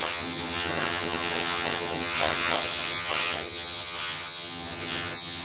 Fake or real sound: fake